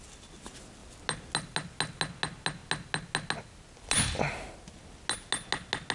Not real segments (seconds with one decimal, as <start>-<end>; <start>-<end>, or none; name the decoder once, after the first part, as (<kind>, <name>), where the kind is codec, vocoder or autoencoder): none